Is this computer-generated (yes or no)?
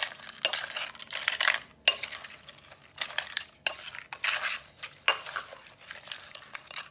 no